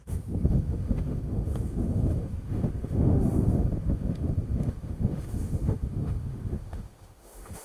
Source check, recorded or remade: remade